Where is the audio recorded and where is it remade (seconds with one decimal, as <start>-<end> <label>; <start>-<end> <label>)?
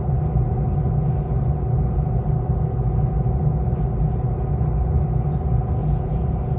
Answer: 0.0-5.8 recorded; 5.8-6.6 remade